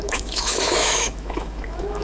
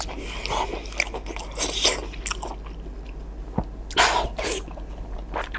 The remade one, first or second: first